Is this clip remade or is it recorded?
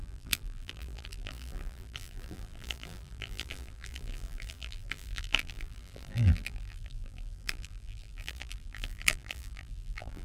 remade